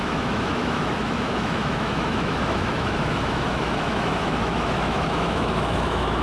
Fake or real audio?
fake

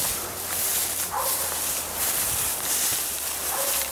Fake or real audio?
real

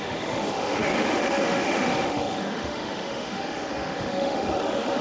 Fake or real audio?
fake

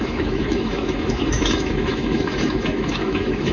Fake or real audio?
fake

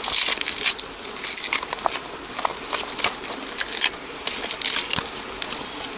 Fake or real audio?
real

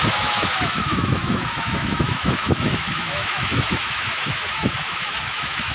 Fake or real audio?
fake